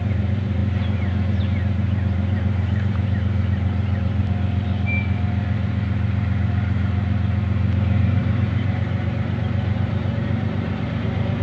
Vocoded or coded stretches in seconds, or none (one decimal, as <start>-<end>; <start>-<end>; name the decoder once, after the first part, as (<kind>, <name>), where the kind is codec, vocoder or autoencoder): 0.0-4.2 (vocoder, BigVGAN v2); 8.0-11.4